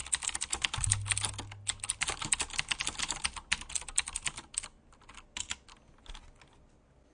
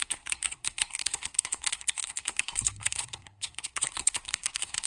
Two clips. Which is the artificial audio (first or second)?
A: second